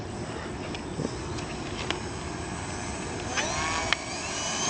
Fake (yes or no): no